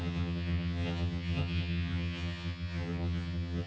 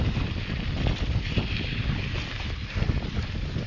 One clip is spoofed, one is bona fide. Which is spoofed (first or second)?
first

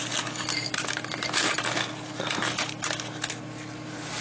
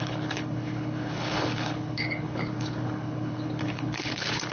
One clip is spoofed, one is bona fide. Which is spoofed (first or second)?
second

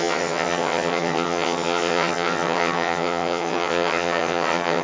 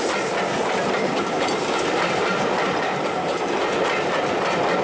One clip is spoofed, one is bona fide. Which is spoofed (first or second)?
first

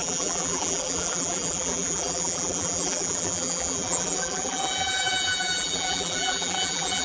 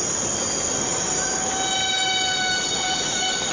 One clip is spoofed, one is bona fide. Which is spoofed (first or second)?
first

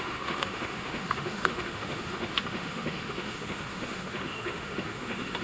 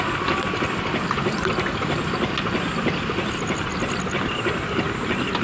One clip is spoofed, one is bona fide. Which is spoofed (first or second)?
first